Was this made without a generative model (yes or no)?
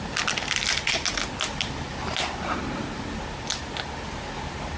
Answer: yes